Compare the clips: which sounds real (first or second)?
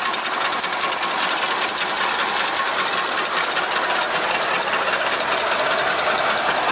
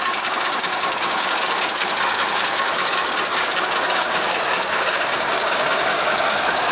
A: first